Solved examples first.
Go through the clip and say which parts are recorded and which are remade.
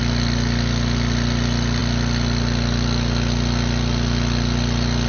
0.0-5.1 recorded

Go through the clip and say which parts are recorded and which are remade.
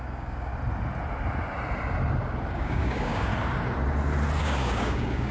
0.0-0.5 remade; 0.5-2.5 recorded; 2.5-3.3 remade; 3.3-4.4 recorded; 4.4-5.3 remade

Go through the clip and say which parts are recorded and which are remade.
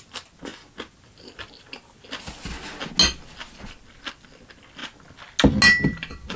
0.0-6.4 recorded